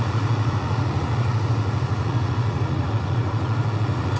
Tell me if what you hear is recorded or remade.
remade